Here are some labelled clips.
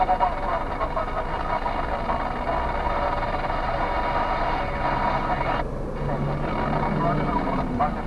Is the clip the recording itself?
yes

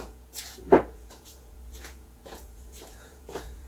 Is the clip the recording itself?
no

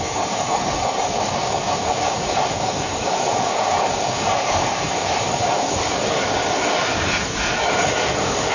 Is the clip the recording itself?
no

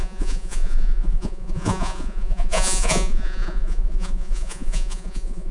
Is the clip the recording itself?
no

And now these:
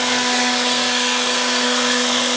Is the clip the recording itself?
no